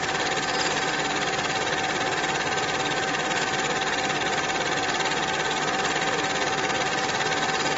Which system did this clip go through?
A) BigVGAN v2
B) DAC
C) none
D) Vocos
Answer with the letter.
C